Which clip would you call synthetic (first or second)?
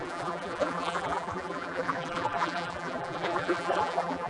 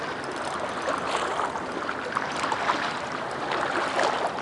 first